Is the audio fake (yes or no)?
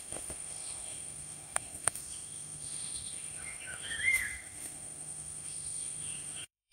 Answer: yes